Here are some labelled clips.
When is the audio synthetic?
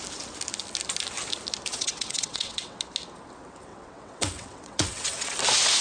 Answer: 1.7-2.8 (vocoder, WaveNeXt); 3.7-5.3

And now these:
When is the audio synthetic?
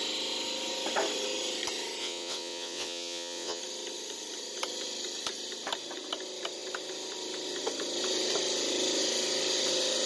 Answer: 2.0-3.6 (vocoder, WaveNeXt)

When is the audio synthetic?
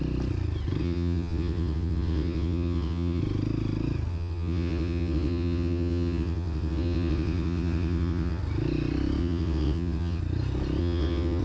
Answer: 0.8-3.2 (vocoder, WaveNeXt); 4.1-8.4; 9.2-10.2; 10.8-11.4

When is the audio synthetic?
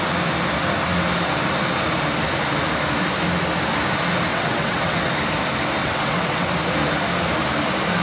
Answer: 4.3-5.1 (vocoder, WaveNeXt); 5.8-6.5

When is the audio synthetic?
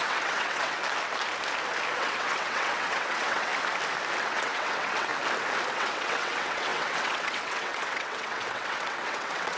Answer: 0.0-0.8 (vocoder, WaveNeXt); 1.9-3.5; 4.2-5.1; 5.7-9.6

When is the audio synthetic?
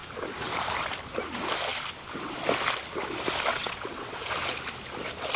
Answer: 3.5-4.2 (vocoder, WaveNeXt)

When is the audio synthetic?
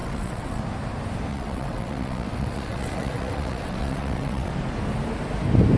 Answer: 0.0-0.6 (vocoder, WaveNeXt); 1.3-4.5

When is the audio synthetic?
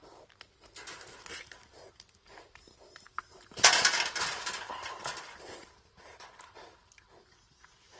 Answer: none